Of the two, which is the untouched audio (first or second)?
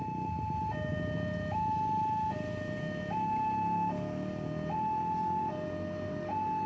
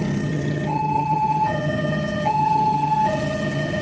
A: first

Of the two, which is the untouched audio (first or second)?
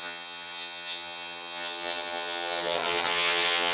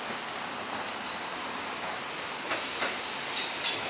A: second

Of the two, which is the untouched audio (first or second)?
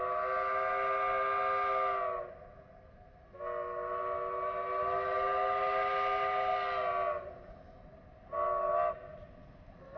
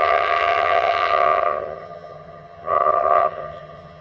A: first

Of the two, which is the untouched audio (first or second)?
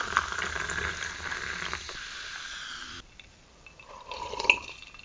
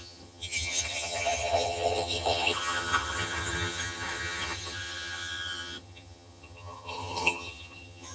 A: first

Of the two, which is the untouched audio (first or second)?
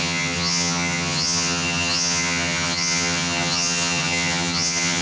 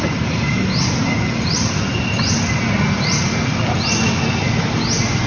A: second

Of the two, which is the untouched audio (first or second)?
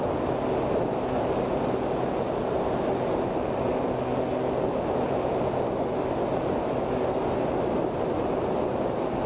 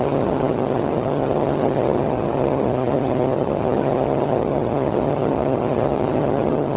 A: first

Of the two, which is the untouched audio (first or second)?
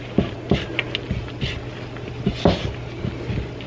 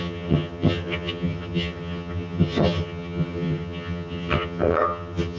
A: first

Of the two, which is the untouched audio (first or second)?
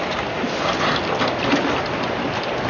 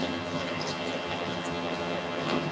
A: first